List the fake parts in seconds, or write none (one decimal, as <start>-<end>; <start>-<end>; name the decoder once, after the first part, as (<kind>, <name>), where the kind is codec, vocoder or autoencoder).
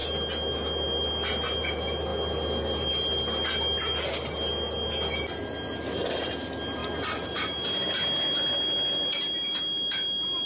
none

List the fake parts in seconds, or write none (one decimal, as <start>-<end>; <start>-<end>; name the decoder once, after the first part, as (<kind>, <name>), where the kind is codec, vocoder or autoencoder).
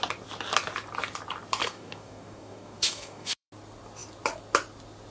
1.6-3.5 (codec, DAC)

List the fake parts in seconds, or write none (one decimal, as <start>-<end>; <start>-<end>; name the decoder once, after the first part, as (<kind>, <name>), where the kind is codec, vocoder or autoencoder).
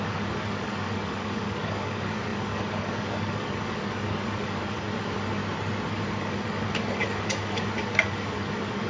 0.0-5.4 (codec, DAC); 5.9-8.9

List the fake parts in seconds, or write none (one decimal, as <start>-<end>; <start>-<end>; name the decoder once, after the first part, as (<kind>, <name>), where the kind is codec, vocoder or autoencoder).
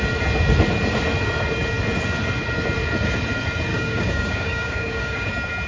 3.7-5.3 (codec, DAC)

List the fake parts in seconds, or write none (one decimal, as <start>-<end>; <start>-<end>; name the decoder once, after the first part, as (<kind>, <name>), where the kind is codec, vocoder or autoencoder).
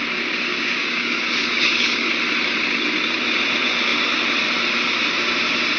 0.5-2.1 (codec, DAC)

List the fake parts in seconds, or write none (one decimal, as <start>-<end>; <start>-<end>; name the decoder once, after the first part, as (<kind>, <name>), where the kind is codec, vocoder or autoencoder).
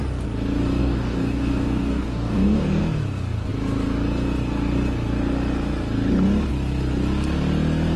0.8-2.8 (codec, DAC)